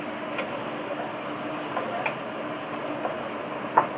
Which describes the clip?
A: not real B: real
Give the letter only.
B